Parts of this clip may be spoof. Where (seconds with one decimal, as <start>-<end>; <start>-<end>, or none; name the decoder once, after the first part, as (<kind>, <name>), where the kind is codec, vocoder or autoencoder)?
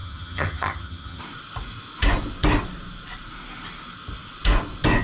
0.0-1.2 (vocoder, HiFi-GAN)